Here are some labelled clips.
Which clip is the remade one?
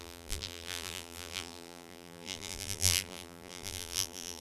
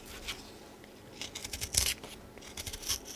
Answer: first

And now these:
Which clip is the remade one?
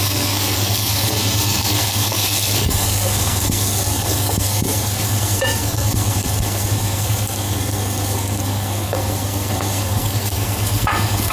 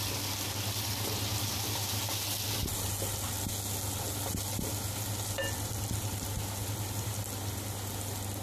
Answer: first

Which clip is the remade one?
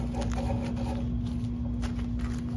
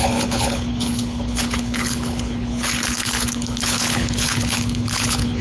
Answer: second